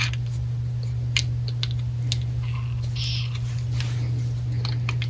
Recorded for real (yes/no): yes